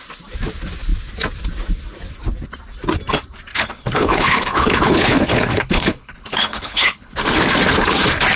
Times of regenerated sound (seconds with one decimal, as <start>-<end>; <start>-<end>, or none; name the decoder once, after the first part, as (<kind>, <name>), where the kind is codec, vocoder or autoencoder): 3.5-7.2 (codec, HILCodec)